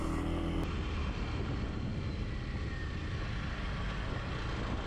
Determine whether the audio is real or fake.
real